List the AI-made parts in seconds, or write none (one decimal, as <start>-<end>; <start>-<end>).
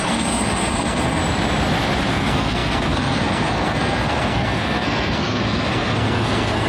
0.0-1.2; 2.1-6.7